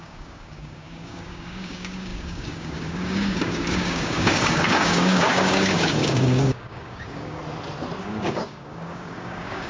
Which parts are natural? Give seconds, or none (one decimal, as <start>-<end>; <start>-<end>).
7.4-8.0